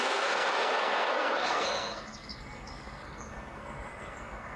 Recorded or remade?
remade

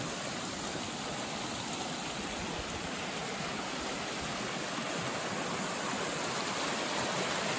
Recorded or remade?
recorded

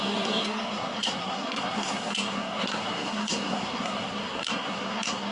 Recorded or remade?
remade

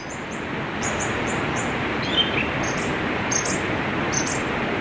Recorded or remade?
recorded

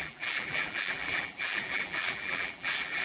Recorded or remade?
remade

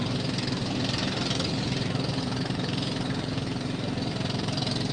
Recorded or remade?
remade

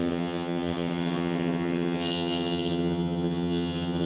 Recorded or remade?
remade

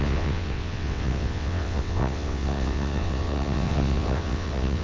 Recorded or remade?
remade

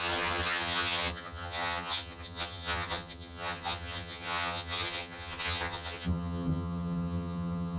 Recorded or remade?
remade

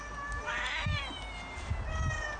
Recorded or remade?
recorded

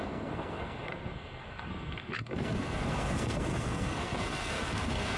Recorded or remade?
remade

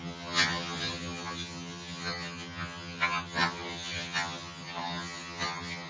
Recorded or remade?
remade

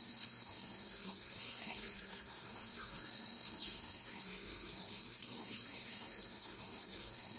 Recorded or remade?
remade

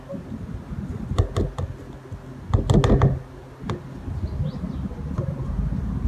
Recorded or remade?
recorded